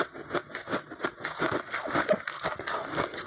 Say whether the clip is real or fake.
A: real